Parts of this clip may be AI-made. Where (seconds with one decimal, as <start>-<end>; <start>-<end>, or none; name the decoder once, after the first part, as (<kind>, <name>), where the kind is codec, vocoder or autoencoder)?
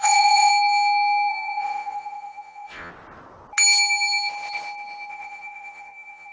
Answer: 0.0-0.5 (vocoder, Vocos); 1.3-2.9; 5.1-6.3